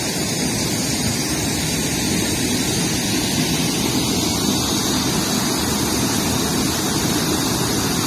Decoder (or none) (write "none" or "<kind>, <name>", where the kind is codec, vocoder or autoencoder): none